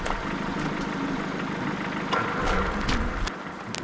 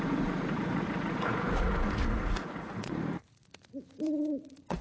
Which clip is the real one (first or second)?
first